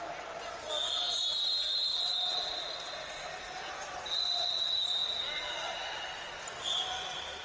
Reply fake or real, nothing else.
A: real